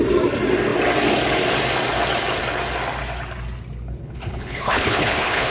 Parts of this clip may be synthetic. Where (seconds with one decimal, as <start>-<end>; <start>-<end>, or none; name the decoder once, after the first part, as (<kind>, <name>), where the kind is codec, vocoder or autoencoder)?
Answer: 4.0-5.5 (codec, HILCodec)